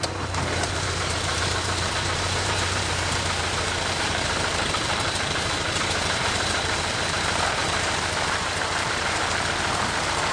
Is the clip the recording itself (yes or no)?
no